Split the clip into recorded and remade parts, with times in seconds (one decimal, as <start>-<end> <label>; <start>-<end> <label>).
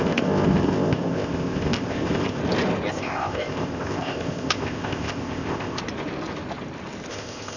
0.0-2.4 remade; 2.4-2.9 recorded; 2.9-5.8 remade; 5.8-7.1 recorded; 7.1-7.6 remade